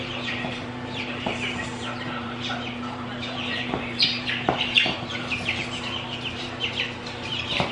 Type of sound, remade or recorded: remade